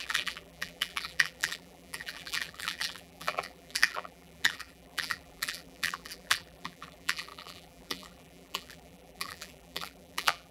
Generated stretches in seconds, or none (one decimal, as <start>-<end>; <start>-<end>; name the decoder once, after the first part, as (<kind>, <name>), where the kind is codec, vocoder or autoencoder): 0.0-10.5 (vocoder, BigVGAN v2)